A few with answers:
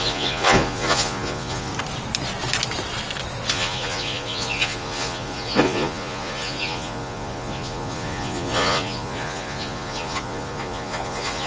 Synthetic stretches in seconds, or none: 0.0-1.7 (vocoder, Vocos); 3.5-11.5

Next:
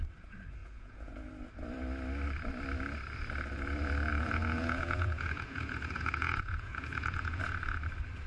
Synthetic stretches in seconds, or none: 0.6-1.3 (vocoder, Vocos); 4.1-7.4

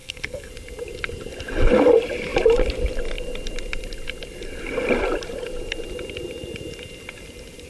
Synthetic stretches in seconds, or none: 0.0-0.5 (codec, SNAC)